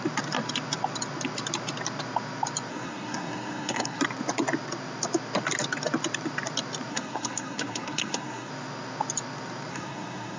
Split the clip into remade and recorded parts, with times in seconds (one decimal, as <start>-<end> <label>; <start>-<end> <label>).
0.0-2.7 recorded; 2.7-4.0 remade; 4.0-6.9 recorded; 6.9-8.5 remade; 8.5-9.7 recorded; 9.7-10.4 remade